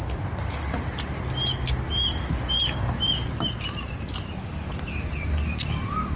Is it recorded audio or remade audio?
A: recorded